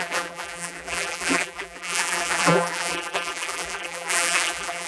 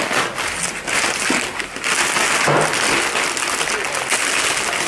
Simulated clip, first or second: first